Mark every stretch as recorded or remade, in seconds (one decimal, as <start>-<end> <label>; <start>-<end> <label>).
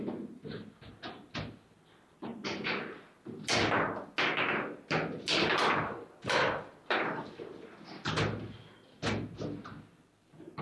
0.0-10.6 recorded